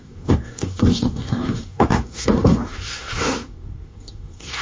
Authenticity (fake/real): fake